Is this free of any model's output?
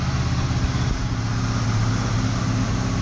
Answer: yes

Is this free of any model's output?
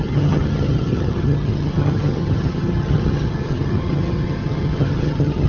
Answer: no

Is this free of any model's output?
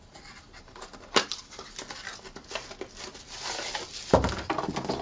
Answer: yes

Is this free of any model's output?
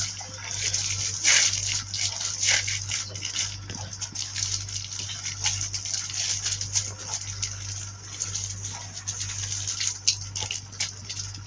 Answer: yes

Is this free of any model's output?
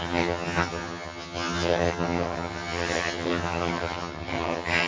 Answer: no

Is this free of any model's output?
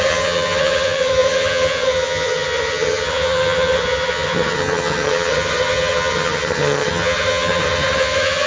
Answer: no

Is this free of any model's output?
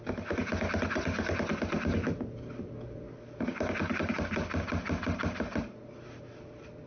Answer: yes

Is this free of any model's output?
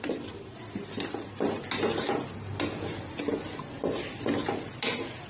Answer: yes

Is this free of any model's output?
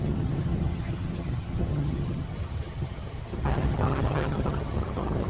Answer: no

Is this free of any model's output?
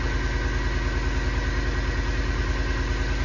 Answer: yes